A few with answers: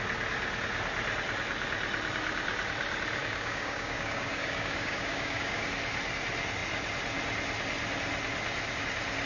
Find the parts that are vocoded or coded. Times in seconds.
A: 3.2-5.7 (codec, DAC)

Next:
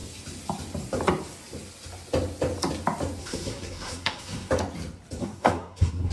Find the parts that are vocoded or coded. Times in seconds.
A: 3.2-4.5 (codec, SNAC); 5.2-6.1

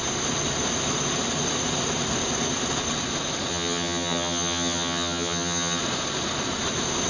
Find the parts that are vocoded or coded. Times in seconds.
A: 3.5-5.8 (vocoder, HiFi-GAN)

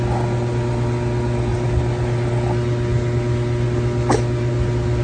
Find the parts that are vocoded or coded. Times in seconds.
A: none